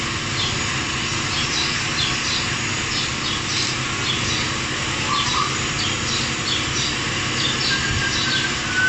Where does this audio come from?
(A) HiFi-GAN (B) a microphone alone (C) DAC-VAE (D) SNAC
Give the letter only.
B